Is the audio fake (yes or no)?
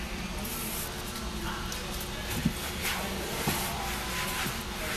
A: no